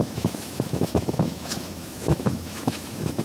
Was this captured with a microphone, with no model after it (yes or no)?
no